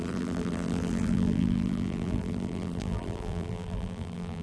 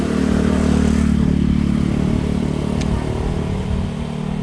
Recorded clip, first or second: second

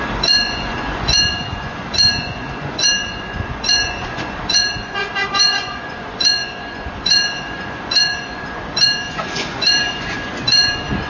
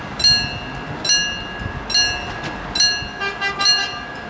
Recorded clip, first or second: second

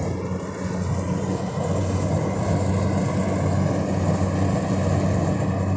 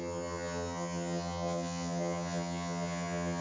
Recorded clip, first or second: first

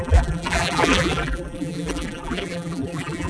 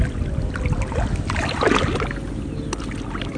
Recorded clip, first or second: second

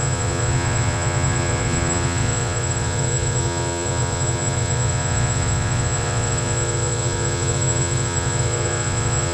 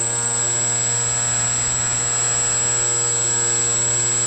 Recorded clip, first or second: second